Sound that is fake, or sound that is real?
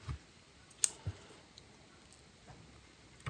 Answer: real